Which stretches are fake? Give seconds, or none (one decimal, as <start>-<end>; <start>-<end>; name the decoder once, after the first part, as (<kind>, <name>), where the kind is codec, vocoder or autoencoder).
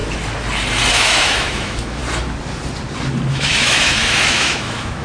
0.9-2.0 (autoencoder, DAC-VAE); 3.3-5.0